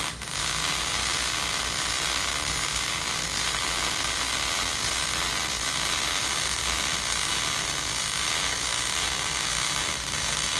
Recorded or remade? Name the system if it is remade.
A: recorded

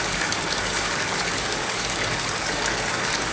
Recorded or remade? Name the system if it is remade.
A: remade, codec, DAC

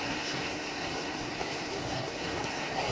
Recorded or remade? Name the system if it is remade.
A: remade, codec, SNAC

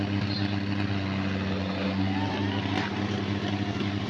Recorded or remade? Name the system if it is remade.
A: recorded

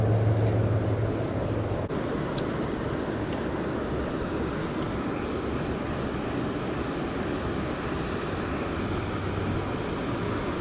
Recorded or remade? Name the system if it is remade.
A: recorded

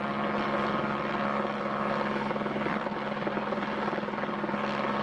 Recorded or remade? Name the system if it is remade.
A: recorded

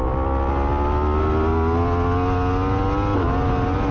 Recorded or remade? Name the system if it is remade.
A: recorded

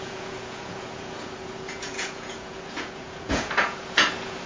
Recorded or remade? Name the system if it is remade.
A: remade, vocoder, Vocos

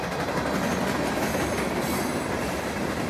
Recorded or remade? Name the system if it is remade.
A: recorded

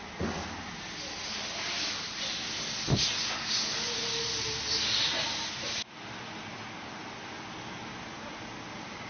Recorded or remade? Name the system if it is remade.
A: recorded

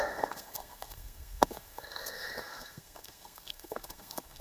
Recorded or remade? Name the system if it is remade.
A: remade, codec, SNAC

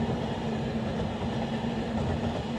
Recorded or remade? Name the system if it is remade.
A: recorded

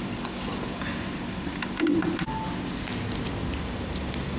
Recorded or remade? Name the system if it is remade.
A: recorded